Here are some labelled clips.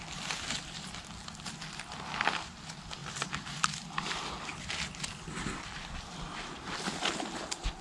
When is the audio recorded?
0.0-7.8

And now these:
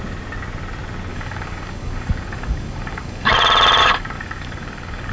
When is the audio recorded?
0.0-1.1; 3.3-3.8

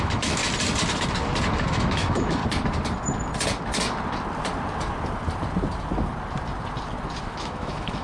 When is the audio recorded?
0.4-1.7; 2.4-7.2

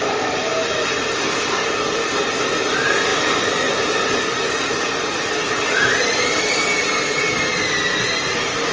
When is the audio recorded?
0.0-8.7

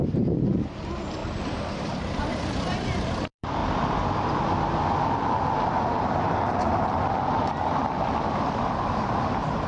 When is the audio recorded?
1.2-1.7; 3.6-8.2